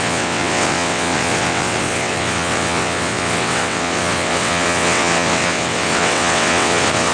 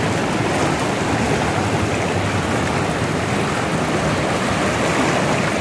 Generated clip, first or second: first